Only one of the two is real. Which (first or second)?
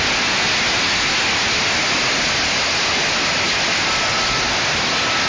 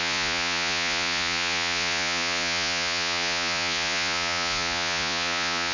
first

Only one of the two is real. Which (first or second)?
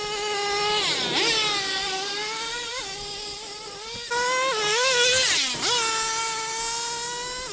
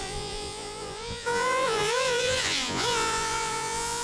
first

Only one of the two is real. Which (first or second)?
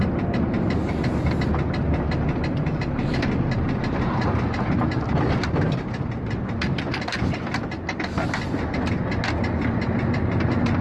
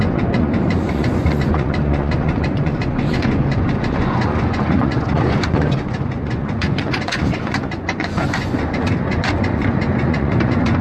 first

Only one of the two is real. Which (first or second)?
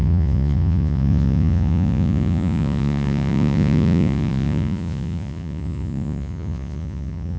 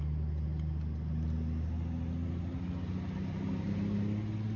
second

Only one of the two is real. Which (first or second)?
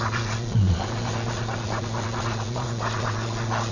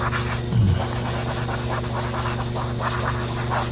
second